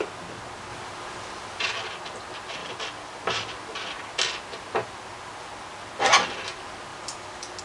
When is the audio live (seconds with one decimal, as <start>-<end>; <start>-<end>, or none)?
0.0-0.7; 1.6-2.6; 3.6-6.9